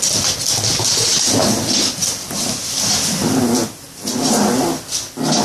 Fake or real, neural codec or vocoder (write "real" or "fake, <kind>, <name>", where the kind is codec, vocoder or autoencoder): real